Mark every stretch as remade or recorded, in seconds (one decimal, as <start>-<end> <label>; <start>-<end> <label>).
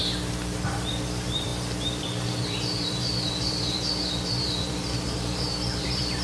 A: 0.0-0.9 recorded; 0.9-6.2 remade